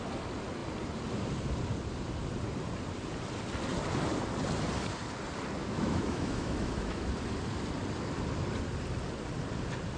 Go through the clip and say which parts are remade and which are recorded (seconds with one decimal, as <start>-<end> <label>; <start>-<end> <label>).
0.0-5.6 recorded; 5.6-7.1 remade; 7.1-10.0 recorded

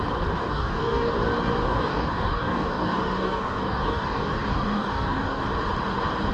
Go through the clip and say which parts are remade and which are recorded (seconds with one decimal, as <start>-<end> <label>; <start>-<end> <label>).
0.0-0.4 recorded; 0.4-1.1 remade; 1.1-1.6 recorded; 1.6-5.4 remade; 5.4-6.3 recorded

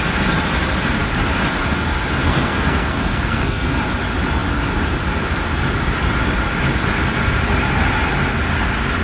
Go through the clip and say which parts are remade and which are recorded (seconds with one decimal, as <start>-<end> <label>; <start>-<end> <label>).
0.0-2.2 recorded; 2.2-3.8 remade; 3.8-9.0 recorded